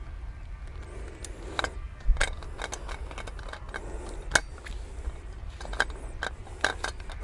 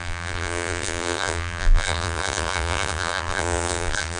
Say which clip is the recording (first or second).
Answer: first